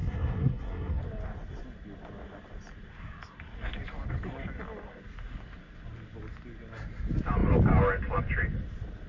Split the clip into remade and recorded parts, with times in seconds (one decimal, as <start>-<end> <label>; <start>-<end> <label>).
0.0-1.0 remade; 1.0-9.1 recorded